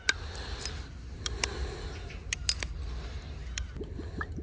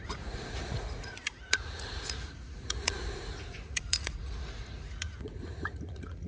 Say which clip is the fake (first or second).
second